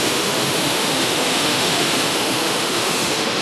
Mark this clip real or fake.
fake